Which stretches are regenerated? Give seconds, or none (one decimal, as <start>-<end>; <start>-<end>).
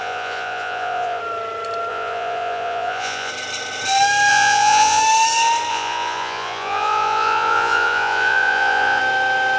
0.0-1.2; 1.9-3.3; 4.3-5.0; 5.7-9.0